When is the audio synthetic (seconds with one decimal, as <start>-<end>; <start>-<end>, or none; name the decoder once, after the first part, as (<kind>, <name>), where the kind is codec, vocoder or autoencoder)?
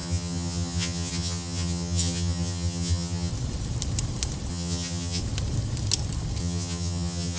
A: 0.0-3.3 (vocoder, HiFi-GAN); 4.5-5.2; 6.4-7.4